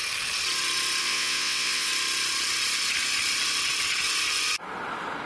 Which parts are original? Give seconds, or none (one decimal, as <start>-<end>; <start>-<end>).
0.0-1.0; 1.9-5.3